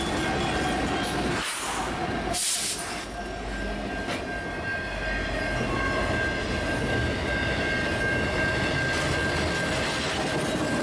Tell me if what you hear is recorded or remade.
recorded